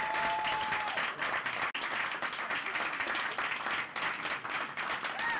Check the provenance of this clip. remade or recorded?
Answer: recorded